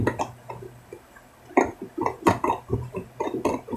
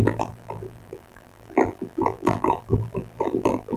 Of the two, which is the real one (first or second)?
first